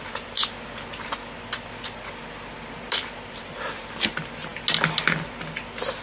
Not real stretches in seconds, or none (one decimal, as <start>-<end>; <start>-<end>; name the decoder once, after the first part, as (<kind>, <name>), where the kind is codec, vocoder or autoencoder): none